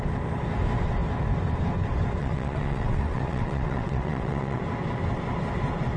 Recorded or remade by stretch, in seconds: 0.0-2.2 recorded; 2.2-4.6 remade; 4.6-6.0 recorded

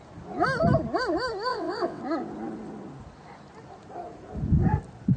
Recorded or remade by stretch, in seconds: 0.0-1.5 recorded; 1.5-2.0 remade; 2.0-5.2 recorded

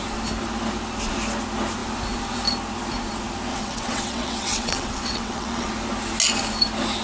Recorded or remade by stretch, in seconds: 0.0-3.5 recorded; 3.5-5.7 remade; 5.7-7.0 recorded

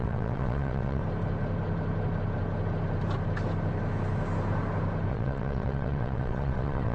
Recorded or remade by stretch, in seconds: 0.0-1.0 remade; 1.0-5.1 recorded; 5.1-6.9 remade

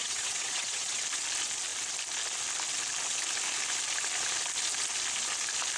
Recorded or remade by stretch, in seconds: 0.0-1.0 remade; 1.0-5.8 recorded

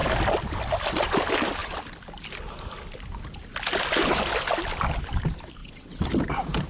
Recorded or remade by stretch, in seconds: 0.0-5.6 recorded; 5.6-6.1 remade; 6.1-6.7 recorded